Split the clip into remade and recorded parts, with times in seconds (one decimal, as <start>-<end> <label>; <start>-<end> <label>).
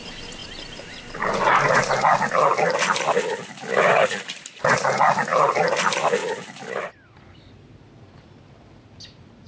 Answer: 0.0-9.5 recorded